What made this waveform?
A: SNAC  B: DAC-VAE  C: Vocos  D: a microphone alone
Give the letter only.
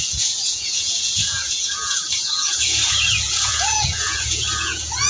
C